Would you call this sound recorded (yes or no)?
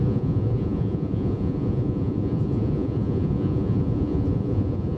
no